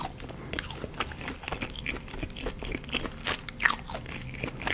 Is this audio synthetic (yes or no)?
no